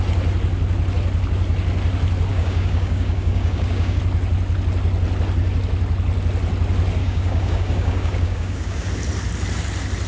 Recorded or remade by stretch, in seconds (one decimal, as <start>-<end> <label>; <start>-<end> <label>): 0.0-2.3 recorded; 2.3-4.0 remade; 4.0-7.0 recorded; 7.0-8.9 remade; 8.9-10.1 recorded